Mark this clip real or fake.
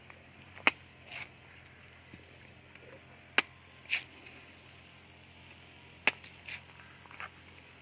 real